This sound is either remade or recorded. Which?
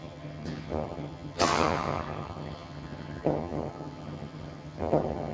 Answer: remade